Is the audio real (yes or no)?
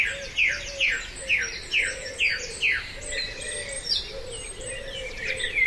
yes